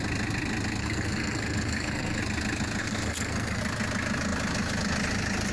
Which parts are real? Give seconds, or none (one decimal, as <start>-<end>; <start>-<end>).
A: 0.0-0.8; 2.2-2.8; 3.6-5.5